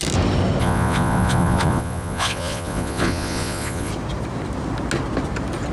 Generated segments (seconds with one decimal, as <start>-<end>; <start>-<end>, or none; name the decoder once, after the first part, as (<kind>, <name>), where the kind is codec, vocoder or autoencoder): 0.6-3.9 (vocoder, Vocos)